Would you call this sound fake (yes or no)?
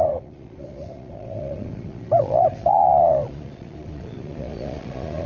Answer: yes